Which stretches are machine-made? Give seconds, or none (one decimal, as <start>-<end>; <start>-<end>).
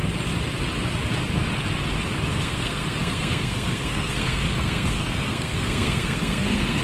2.3-6.8